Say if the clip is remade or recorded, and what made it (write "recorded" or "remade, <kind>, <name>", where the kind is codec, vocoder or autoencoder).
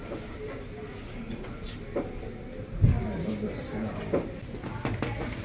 recorded